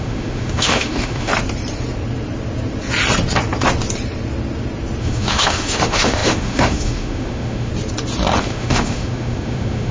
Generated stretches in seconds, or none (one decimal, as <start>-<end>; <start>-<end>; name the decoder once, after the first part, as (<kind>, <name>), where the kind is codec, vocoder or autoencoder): 0.0-1.3 (autoencoder, DAC-VAE); 5.0-7.7; 8.4-9.9

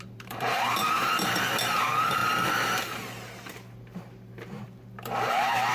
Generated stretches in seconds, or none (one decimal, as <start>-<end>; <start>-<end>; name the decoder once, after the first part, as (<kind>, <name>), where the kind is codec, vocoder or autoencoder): 0.0-2.2 (vocoder, BigVGAN v2); 5.3-5.7

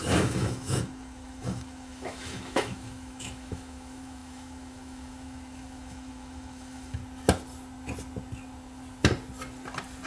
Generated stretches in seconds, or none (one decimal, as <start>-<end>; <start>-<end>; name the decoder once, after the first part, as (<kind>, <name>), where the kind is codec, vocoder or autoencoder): 0.0-7.0 (autoencoder, DAC-VAE)

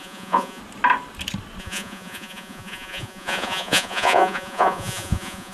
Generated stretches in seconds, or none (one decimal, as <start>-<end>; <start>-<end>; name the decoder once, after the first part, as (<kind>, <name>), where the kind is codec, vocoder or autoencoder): 0.0-0.6 (vocoder, Vocos); 1.6-5.5